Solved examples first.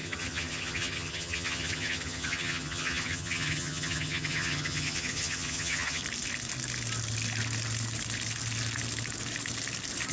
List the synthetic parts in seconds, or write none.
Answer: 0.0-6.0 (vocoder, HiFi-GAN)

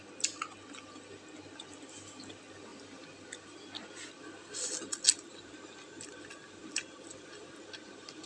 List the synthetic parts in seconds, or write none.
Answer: none